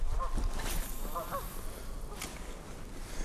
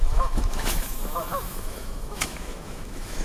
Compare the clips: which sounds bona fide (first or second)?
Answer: first